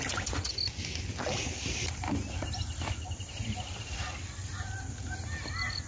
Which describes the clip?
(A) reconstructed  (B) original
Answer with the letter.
B